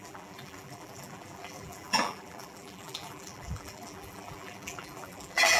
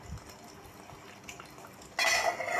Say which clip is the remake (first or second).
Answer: first